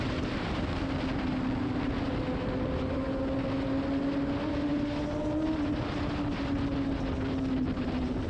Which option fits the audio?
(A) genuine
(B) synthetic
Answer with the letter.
A